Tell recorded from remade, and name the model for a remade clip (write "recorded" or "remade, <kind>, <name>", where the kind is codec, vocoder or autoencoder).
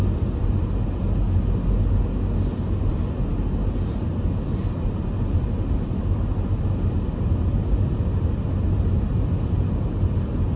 recorded